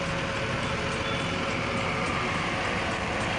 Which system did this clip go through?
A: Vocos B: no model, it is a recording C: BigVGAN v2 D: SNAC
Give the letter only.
B